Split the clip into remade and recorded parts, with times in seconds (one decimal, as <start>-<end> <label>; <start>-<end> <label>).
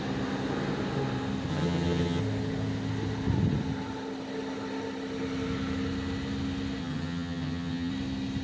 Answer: 0.0-1.5 recorded; 1.5-2.2 remade; 2.2-6.8 recorded; 6.8-7.9 remade; 7.9-8.4 recorded